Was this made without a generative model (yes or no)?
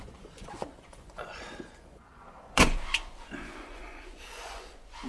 no